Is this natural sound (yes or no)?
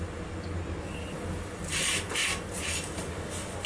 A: yes